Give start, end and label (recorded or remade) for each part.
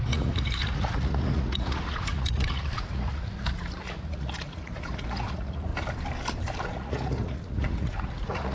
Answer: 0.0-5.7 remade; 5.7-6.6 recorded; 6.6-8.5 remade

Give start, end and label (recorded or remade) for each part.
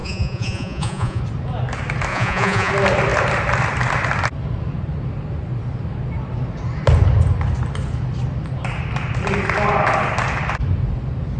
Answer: 0.0-1.2 remade; 1.2-2.1 recorded; 2.1-2.7 remade; 2.7-11.4 recorded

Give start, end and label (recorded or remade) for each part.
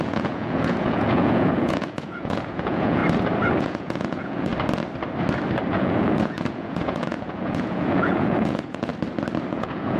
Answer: 0.0-3.0 remade; 3.0-3.6 recorded; 3.6-4.5 remade; 4.5-5.7 recorded; 5.7-8.9 remade; 8.9-9.5 recorded; 9.5-10.0 remade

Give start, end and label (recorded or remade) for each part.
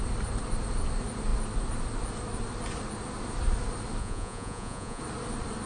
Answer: 0.0-4.0 recorded; 4.0-5.0 remade; 5.0-5.7 recorded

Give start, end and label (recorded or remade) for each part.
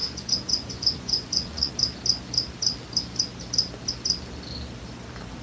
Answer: 0.0-1.7 remade; 1.7-5.4 recorded